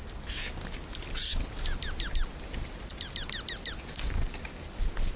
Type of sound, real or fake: real